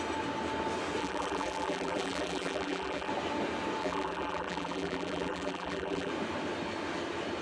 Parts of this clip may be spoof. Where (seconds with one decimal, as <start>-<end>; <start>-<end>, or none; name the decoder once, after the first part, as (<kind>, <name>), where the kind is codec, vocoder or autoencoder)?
1.0-3.1 (vocoder, BigVGAN v2); 3.8-6.1